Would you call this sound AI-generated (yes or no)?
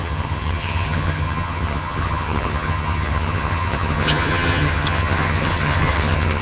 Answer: yes